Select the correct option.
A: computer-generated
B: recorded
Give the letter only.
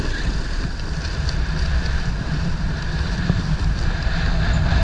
B